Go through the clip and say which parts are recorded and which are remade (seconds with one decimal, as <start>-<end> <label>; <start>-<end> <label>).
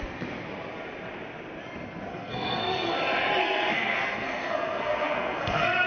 0.0-2.1 recorded; 2.1-2.9 remade; 2.9-3.4 recorded; 3.4-5.9 remade